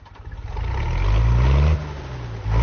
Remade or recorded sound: recorded